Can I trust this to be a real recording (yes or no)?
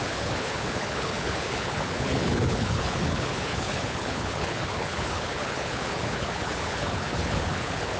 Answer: no